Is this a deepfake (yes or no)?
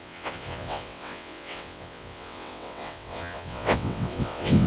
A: yes